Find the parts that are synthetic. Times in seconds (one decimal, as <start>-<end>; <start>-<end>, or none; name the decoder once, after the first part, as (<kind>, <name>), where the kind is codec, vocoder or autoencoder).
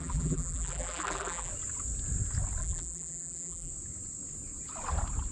0.0-1.5 (vocoder, BigVGAN v2); 2.6-3.7